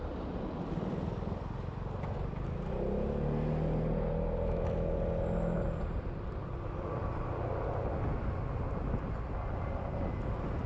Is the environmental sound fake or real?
real